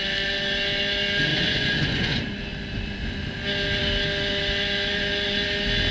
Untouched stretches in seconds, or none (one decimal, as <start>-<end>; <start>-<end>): 0.0-1.3; 2.2-5.9